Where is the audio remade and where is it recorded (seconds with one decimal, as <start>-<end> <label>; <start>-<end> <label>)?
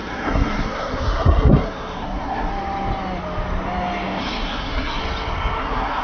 0.0-2.5 remade; 2.5-4.2 recorded; 4.2-5.0 remade; 5.0-5.6 recorded; 5.6-6.0 remade